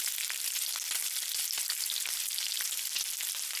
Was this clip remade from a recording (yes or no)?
no